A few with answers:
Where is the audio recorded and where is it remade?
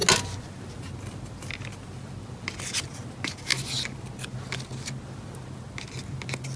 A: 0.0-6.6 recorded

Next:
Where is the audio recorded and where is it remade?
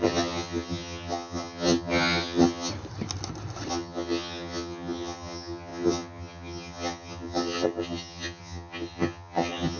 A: 0.0-2.7 remade; 2.7-3.7 recorded; 3.7-9.8 remade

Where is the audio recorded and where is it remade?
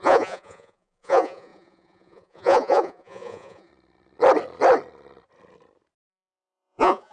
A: 0.0-3.7 remade; 3.7-6.1 recorded; 6.1-7.1 remade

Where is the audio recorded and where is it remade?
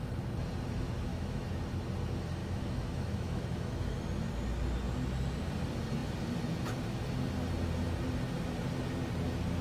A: 0.0-1.1 recorded; 1.1-1.6 remade; 1.6-2.4 recorded; 2.4-4.0 remade; 4.0-9.6 recorded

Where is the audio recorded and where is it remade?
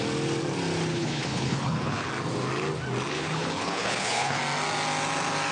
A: 0.0-0.9 recorded; 0.9-2.1 remade; 2.1-3.1 recorded; 3.1-4.4 remade; 4.4-5.5 recorded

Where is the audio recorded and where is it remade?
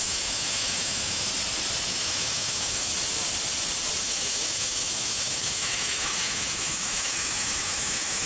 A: 0.0-1.3 remade; 1.3-1.9 recorded; 1.9-2.9 remade; 2.9-4.0 recorded; 4.0-8.3 remade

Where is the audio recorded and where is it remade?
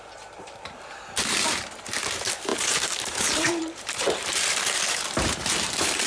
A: 0.0-6.1 remade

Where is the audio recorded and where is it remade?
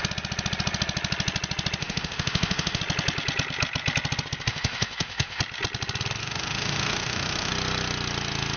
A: 0.0-1.8 recorded; 1.8-2.8 remade; 2.8-4.5 recorded; 4.5-5.4 remade; 5.4-6.2 recorded; 6.2-7.5 remade; 7.5-8.6 recorded